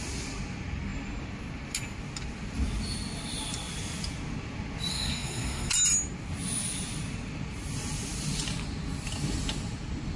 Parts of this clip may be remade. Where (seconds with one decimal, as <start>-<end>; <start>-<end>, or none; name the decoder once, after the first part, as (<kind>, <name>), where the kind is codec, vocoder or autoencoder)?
4.9-5.7 (codec, SNAC)